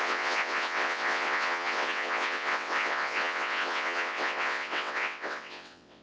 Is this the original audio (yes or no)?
no